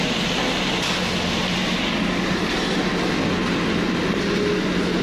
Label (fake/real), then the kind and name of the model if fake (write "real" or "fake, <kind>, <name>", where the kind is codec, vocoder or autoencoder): real